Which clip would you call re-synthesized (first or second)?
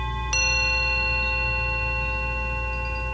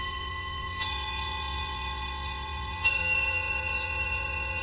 second